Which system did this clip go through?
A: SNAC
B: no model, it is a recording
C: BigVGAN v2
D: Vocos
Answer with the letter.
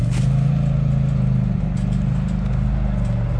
B